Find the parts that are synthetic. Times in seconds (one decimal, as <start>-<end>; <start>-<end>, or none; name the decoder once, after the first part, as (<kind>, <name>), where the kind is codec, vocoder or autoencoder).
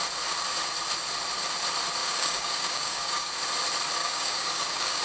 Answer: 2.0-3.3 (codec, DAC); 4.0-5.0